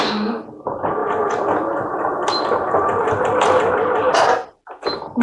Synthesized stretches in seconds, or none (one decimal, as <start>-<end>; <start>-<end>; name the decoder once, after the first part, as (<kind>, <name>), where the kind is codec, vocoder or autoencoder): none